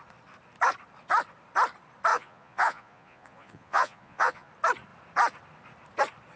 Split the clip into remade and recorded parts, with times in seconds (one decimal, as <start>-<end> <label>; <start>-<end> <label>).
0.0-2.1 recorded; 2.1-4.5 remade; 4.5-6.4 recorded